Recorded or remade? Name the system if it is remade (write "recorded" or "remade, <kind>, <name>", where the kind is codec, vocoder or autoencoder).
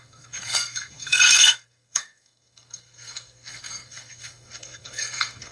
remade, codec, SNAC